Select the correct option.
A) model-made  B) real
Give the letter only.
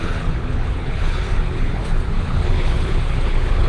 A